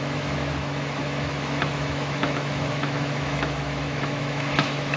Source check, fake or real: fake